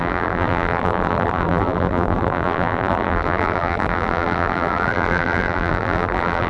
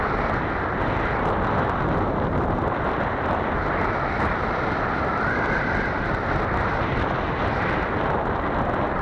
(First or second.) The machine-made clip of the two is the first